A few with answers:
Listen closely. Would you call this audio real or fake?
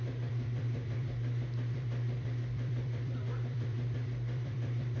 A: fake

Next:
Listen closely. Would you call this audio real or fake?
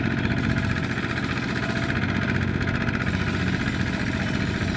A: real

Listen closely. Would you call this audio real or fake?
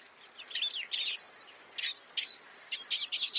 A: real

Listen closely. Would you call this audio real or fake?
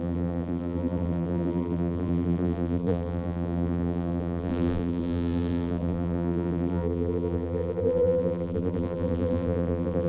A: fake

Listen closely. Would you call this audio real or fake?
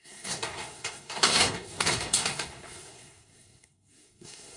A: fake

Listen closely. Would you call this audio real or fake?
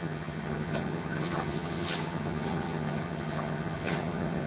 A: fake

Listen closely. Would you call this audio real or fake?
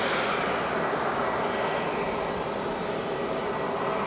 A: real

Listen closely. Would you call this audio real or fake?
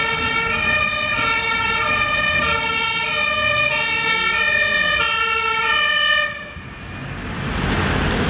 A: real